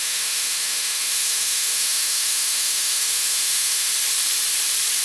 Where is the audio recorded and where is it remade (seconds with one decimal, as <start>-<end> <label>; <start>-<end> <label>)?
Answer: 0.0-3.9 remade; 3.9-5.0 recorded

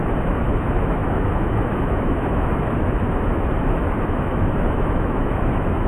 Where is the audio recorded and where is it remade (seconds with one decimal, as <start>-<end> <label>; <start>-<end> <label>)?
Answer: 0.0-5.9 remade

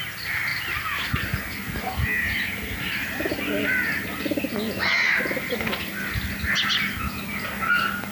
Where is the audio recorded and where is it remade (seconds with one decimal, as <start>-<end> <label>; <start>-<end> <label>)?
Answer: 0.0-8.1 recorded